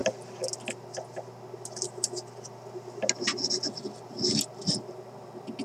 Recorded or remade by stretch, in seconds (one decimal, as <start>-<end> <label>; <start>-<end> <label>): 0.0-5.6 recorded